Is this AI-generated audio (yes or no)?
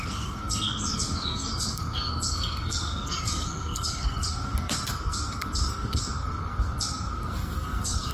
yes